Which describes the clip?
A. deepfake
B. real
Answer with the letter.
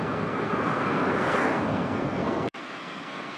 A